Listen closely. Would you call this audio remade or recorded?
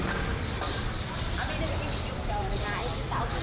recorded